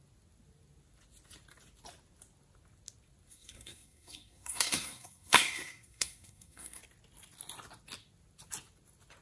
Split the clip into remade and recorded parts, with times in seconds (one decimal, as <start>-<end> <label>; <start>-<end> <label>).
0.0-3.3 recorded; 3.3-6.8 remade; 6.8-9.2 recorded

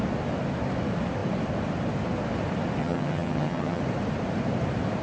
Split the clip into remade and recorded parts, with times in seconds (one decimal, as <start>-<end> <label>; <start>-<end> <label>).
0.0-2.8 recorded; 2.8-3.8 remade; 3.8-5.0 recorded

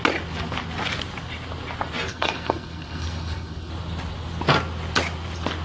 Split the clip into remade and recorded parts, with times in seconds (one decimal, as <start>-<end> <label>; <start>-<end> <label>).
0.0-2.1 recorded; 2.1-3.7 remade; 3.7-5.6 recorded

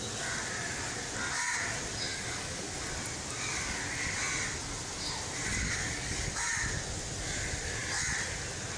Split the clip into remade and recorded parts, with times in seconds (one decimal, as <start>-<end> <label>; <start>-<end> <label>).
0.0-2.1 recorded; 2.1-2.7 remade; 2.7-5.5 recorded; 5.5-6.5 remade; 6.5-8.8 recorded

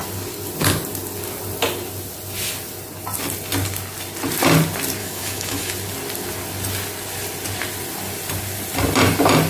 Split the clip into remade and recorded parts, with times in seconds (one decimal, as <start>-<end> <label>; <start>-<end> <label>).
0.0-5.0 recorded; 5.0-5.7 remade; 5.7-9.5 recorded